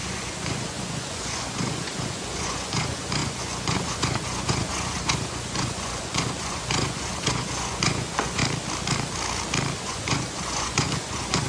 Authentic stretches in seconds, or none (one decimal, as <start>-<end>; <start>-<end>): 8.4-9.8